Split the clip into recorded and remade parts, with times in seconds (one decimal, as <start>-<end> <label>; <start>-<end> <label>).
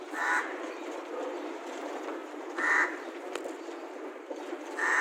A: 0.0-0.8 remade; 0.8-1.5 recorded; 1.5-2.2 remade; 2.2-4.1 recorded; 4.1-5.0 remade